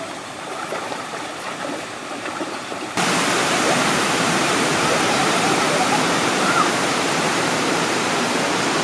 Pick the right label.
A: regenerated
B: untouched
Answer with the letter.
A